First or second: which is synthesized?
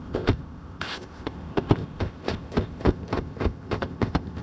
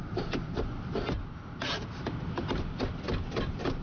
first